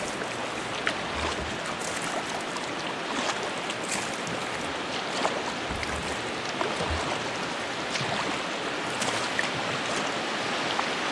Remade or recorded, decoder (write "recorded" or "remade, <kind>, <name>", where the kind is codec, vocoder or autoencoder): recorded